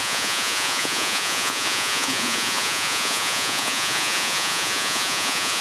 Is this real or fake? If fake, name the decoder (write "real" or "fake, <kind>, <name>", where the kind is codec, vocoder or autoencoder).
fake, vocoder, Vocos